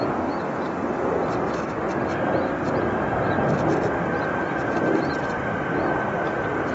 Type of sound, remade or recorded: recorded